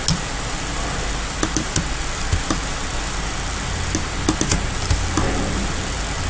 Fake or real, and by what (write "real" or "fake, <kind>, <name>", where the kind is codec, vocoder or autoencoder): real